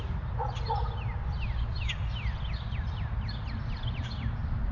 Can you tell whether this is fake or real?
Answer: real